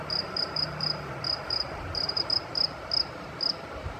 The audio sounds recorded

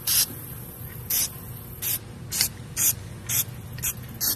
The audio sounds recorded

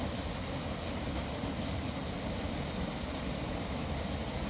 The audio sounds recorded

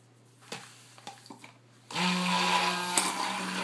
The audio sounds recorded